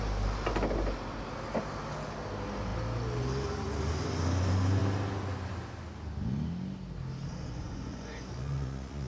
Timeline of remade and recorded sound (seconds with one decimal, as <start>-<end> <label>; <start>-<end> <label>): 0.0-7.3 recorded; 7.3-9.1 remade